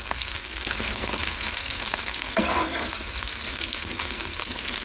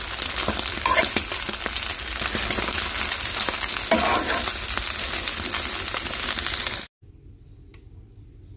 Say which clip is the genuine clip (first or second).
second